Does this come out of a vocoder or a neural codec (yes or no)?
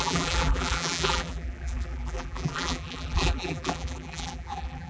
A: yes